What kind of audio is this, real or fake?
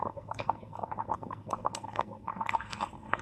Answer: fake